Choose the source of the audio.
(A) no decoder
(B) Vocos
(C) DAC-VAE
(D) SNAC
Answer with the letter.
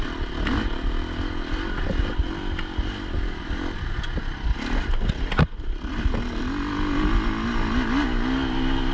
A